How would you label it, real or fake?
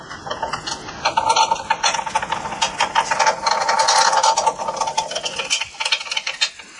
real